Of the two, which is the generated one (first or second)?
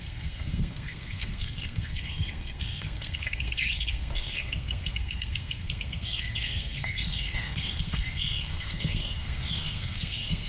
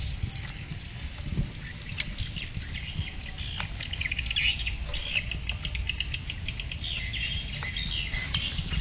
first